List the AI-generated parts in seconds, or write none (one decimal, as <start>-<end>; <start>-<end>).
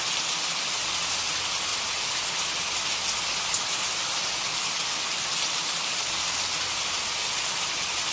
none